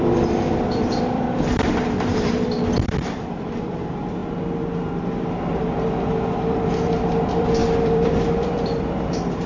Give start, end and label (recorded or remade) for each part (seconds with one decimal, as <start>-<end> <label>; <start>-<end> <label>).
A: 0.0-4.2 remade; 4.2-6.3 recorded; 6.3-9.5 remade